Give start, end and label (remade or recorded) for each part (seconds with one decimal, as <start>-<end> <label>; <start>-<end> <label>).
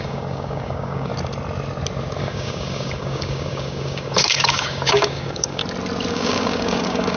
0.0-1.1 remade; 1.1-2.2 recorded; 2.2-5.6 remade; 5.6-6.1 recorded; 6.1-7.2 remade